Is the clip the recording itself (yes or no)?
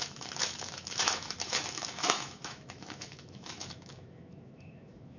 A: no